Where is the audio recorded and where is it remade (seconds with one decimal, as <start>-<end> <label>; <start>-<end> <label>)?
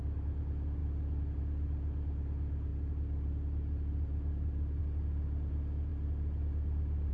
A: 0.0-2.7 recorded; 2.7-4.8 remade; 4.8-7.1 recorded